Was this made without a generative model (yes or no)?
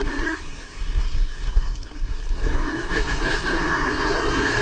no